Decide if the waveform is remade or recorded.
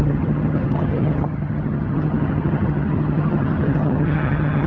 remade